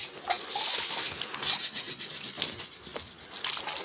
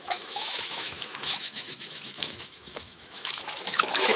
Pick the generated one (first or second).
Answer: second